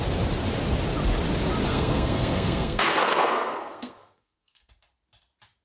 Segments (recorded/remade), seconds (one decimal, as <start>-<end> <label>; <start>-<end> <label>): 0.0-1.7 recorded; 1.7-4.7 remade; 4.7-5.6 recorded